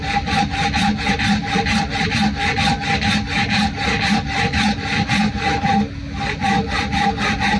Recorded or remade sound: recorded